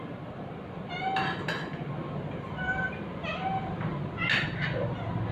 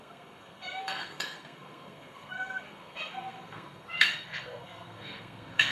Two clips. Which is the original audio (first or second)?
first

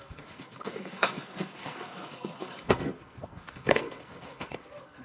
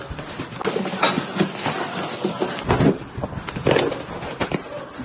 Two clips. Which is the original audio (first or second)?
second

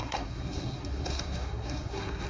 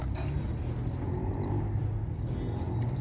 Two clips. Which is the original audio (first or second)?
second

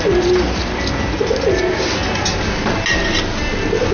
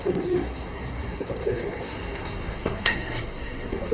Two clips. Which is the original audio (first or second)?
first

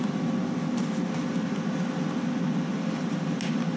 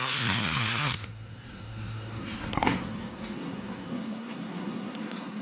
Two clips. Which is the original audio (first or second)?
first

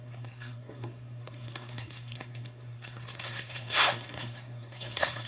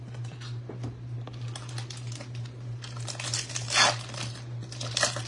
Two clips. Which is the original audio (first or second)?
second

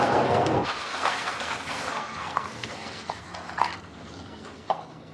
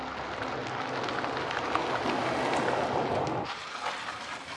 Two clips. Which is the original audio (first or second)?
second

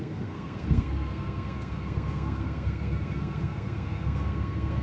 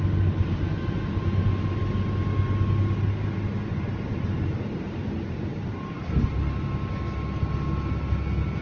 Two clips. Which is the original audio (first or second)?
second